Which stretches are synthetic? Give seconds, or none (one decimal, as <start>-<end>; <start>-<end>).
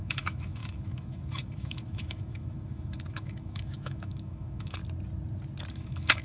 0.0-4.8; 5.7-6.2